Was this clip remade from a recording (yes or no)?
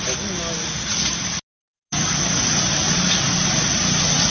no